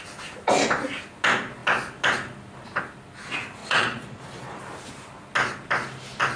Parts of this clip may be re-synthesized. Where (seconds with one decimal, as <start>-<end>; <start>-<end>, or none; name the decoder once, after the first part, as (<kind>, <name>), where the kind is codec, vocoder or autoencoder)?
3.6-4.6 (vocoder, Vocos)